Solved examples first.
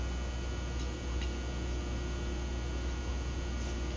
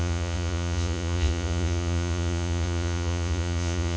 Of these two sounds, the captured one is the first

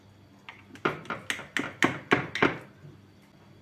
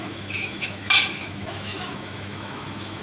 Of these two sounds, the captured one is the first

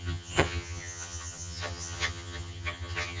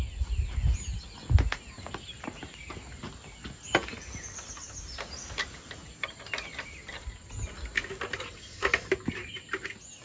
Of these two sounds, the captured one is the second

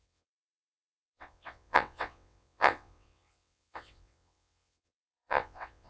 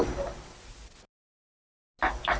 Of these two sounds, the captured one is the second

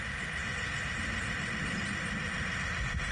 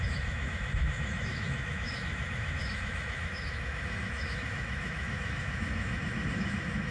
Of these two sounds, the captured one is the first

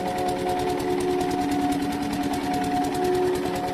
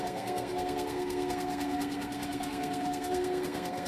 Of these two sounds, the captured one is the first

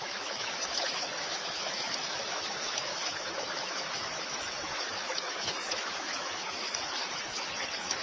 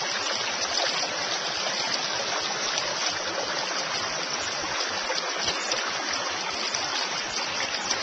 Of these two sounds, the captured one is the second